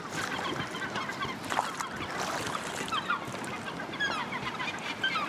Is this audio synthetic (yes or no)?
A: yes